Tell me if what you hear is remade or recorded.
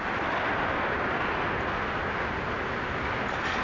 recorded